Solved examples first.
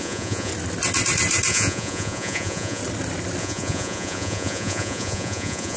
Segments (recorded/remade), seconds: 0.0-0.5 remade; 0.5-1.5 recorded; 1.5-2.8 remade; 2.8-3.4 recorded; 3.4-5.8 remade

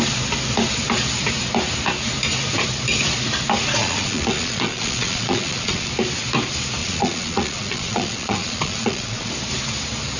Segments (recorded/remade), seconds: 0.0-3.8 recorded; 3.8-5.9 remade; 5.9-6.8 recorded; 6.8-9.3 remade; 9.3-10.2 recorded

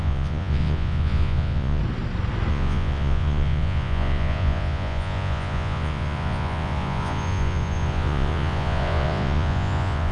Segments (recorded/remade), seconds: 0.0-1.8 remade; 1.8-2.5 recorded; 2.5-10.1 remade

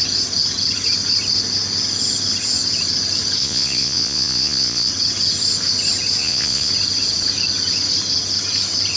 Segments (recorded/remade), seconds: 0.0-3.4 recorded; 3.4-4.9 remade; 4.9-6.2 recorded; 6.2-6.7 remade; 6.7-9.0 recorded

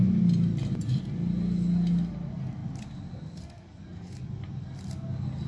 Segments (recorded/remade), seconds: 0.0-5.5 recorded

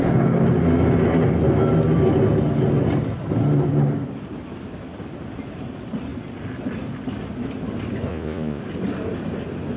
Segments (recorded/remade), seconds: 0.0-8.1 recorded; 8.1-8.6 remade; 8.6-9.8 recorded